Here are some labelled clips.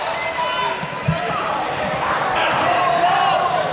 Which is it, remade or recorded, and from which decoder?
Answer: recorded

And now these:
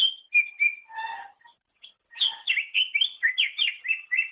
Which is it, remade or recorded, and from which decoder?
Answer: recorded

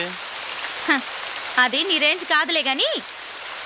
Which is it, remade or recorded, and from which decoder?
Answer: recorded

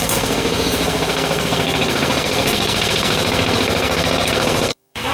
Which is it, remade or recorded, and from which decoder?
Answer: remade, codec, SNAC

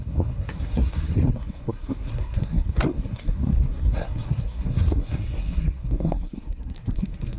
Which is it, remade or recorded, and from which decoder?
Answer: remade, codec, SNAC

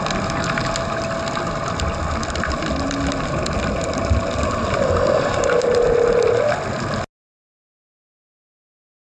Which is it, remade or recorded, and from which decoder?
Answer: recorded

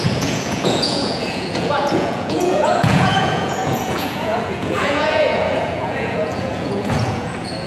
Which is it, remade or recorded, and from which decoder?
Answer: remade, vocoder, Vocos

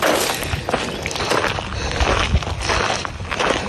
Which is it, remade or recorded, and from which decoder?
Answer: recorded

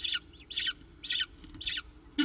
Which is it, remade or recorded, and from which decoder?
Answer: recorded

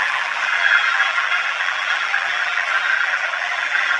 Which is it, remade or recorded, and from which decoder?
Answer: remade, vocoder, BigVGAN v2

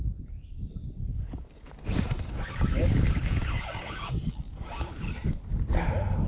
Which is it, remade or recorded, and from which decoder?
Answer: remade, codec, DAC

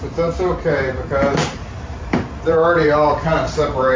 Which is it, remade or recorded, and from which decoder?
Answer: remade, vocoder, BigVGAN v2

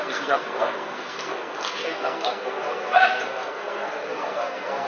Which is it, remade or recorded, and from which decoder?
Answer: remade, codec, SNAC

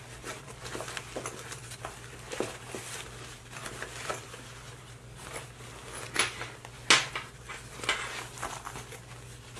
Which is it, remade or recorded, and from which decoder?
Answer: recorded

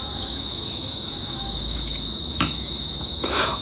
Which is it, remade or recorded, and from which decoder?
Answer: remade, autoencoder, DAC-VAE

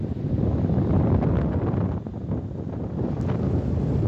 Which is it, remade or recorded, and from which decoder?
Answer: recorded